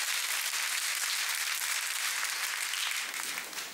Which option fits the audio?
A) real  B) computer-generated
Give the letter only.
A